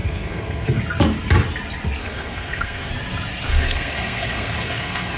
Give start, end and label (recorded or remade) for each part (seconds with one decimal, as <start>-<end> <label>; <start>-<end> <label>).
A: 0.0-0.8 remade; 0.8-2.0 recorded; 2.0-2.9 remade; 2.9-3.5 recorded; 3.5-5.2 remade